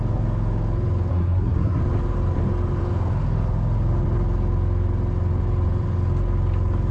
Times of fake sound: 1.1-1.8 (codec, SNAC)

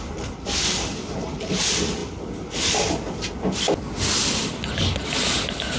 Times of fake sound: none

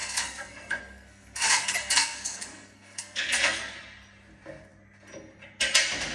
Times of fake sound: 0.0-3.7 (codec, SNAC)